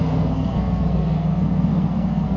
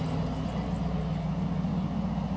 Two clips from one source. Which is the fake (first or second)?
first